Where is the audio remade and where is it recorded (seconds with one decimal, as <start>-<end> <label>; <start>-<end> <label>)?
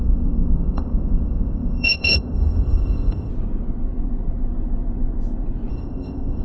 0.0-3.3 remade; 3.3-5.7 recorded; 5.7-6.4 remade